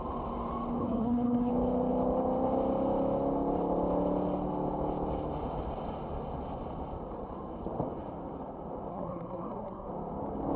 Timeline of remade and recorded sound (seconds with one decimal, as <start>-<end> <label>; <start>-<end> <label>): 0.0-0.8 recorded; 0.8-1.5 remade; 1.5-8.9 recorded; 8.9-9.9 remade; 9.9-10.6 recorded